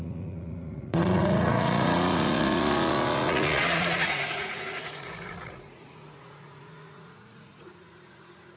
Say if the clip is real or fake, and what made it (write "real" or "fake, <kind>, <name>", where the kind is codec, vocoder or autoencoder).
fake, vocoder, Vocos